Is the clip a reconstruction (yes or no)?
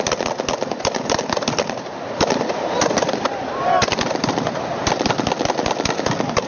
no